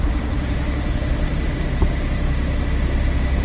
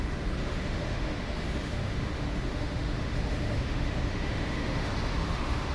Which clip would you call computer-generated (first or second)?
second